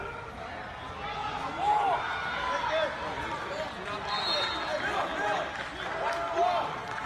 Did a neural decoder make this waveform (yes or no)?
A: no